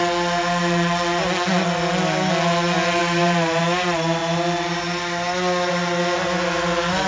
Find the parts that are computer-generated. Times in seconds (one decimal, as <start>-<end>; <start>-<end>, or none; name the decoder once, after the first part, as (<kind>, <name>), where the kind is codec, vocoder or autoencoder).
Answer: 3.0-3.6 (vocoder, BigVGAN v2)